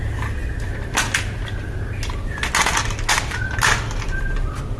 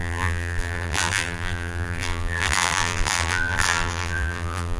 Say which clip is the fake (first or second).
second